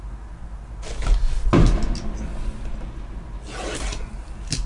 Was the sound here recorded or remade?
recorded